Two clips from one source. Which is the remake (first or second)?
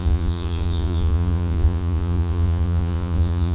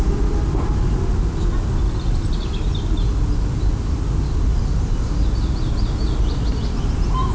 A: first